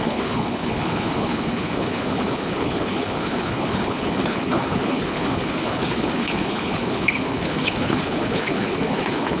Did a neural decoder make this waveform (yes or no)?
yes